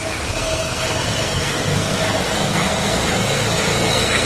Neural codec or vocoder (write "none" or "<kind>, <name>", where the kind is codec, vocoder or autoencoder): codec, SNAC